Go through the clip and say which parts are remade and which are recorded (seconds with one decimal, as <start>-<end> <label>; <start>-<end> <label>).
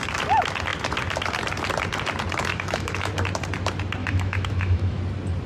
0.0-2.5 recorded; 2.5-3.1 remade; 3.1-4.0 recorded; 4.0-5.0 remade; 5.0-5.5 recorded